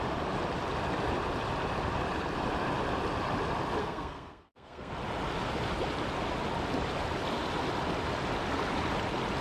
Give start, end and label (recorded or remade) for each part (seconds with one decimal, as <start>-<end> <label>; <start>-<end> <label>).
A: 0.0-3.8 recorded; 3.8-4.9 remade; 4.9-9.4 recorded

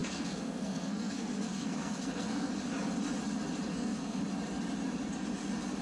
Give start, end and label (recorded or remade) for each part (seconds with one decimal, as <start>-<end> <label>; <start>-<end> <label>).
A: 0.0-2.5 remade; 2.5-3.7 recorded; 3.7-4.2 remade; 4.2-5.8 recorded

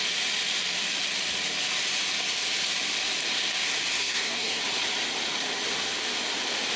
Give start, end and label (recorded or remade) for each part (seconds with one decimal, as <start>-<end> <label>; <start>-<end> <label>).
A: 0.0-4.0 recorded; 4.0-4.6 remade; 4.6-6.8 recorded

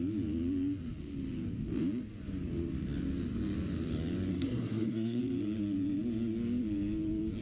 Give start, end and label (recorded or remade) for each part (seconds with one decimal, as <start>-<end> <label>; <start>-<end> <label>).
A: 0.0-4.3 recorded; 4.3-5.2 remade; 5.2-7.4 recorded

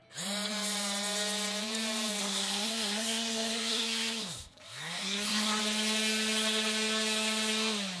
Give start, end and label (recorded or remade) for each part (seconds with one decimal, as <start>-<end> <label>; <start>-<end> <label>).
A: 0.0-2.2 recorded; 2.2-5.6 remade; 5.6-8.0 recorded